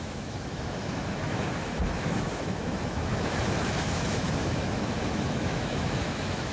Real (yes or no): no